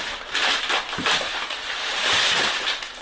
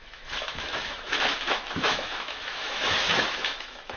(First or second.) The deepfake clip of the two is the second